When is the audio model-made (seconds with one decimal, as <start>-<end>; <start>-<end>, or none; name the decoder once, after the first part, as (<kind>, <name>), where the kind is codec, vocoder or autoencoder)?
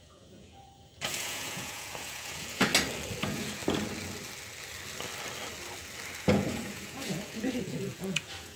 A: 0.0-2.7 (vocoder, Vocos); 3.2-3.6; 6.2-8.6